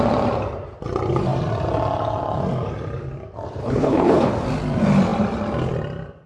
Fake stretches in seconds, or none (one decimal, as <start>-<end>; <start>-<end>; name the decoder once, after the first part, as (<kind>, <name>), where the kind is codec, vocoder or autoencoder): 3.6-4.3 (codec, HILCodec)